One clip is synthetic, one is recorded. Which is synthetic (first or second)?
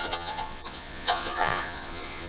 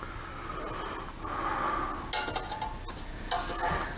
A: first